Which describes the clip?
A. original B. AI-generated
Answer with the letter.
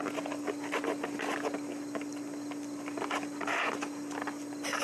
A